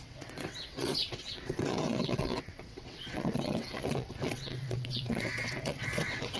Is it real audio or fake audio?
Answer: fake